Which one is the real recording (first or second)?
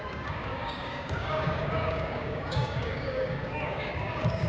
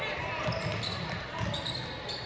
second